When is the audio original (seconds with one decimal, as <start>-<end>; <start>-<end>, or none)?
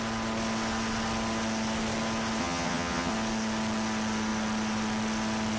0.0-2.4; 3.1-5.6